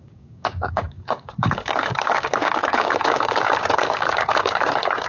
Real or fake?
fake